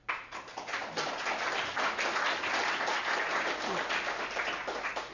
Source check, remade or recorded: recorded